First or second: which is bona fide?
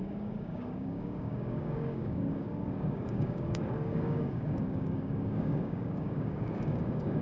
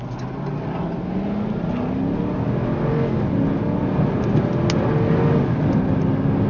second